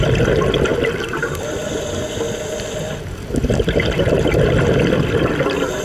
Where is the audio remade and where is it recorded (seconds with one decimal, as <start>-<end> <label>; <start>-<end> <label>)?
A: 0.0-5.8 recorded